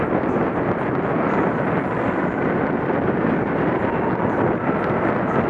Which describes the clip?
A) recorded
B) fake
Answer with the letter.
A